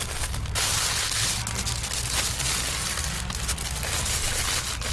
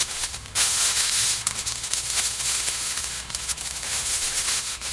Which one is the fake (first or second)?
second